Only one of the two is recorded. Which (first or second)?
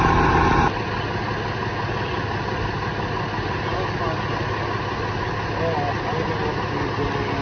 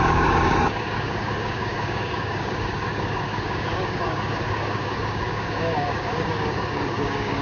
first